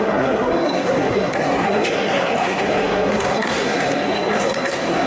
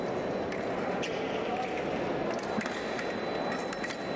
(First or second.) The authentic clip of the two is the second